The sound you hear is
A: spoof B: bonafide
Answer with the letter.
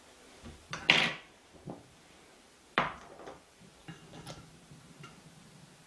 A